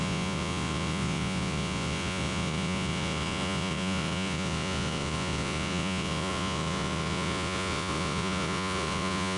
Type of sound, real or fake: fake